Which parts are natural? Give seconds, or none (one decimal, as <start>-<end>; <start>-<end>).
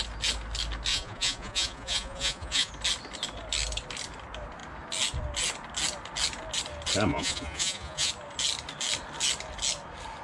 0.0-0.9; 2.7-7.1; 8.1-10.2